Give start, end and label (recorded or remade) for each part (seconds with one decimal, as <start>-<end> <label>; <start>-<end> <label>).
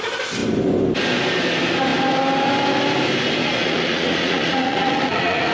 0.0-3.4 recorded; 3.4-5.5 remade